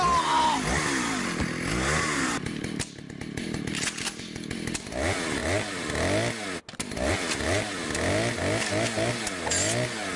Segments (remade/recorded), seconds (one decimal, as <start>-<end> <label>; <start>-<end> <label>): 0.0-10.2 recorded